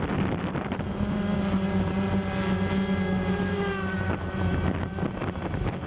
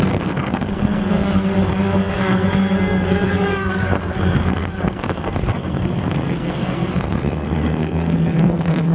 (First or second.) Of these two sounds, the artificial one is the second